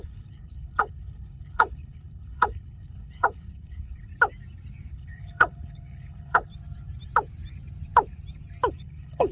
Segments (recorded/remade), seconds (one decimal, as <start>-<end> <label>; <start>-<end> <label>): 0.0-4.1 remade; 4.1-4.9 recorded; 4.9-6.5 remade; 6.5-8.7 recorded; 8.7-9.3 remade